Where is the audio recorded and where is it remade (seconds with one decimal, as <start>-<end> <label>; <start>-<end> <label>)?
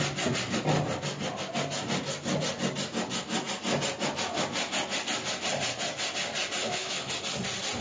0.0-6.6 recorded; 6.6-7.1 remade; 7.1-7.8 recorded